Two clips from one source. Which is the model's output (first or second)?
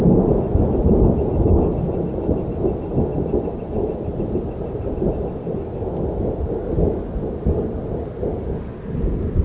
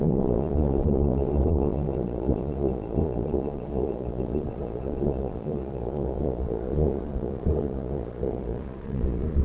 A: second